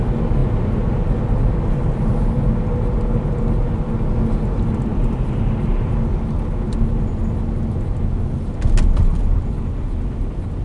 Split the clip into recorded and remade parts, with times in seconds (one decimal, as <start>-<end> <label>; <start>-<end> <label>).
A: 0.0-10.6 recorded